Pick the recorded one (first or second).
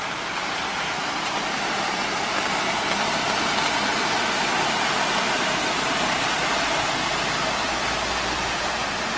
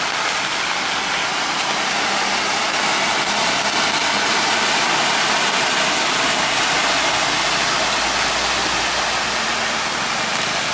second